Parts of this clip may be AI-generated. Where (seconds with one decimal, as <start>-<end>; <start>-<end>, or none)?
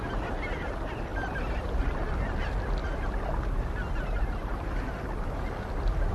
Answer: 1.1-1.8